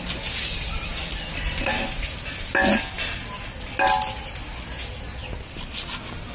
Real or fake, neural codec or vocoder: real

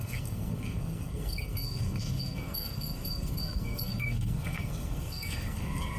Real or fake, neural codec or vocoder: fake, codec, SNAC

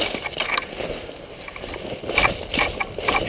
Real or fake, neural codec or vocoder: real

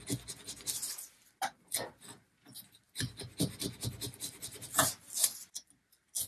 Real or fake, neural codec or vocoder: real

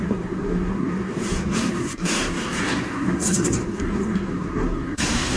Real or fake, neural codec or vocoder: fake, codec, SNAC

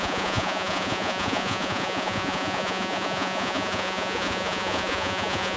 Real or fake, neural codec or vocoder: fake, vocoder, Vocos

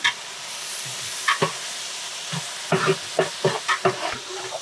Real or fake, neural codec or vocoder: real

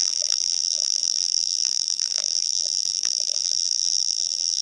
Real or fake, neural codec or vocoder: fake, vocoder, BigVGAN v2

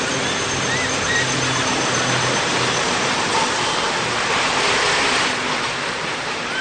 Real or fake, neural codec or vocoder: real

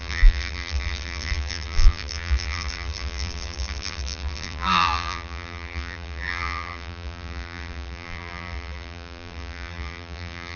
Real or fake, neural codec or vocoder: fake, vocoder, BigVGAN v2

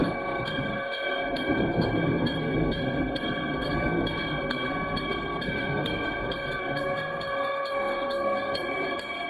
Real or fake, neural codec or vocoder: fake, codec, SNAC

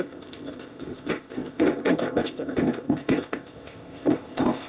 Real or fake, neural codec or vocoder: fake, codec, ZipCodec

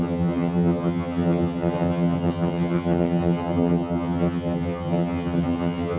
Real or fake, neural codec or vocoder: fake, vocoder, HiFi-GAN